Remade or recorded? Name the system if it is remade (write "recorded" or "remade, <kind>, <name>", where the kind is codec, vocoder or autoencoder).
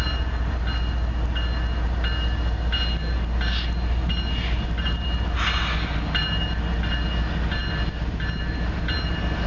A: recorded